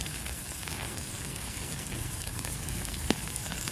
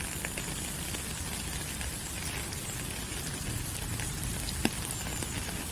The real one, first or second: second